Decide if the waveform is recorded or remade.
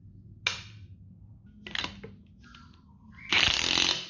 recorded